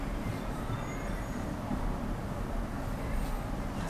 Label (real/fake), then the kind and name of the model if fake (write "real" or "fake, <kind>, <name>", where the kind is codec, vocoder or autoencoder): real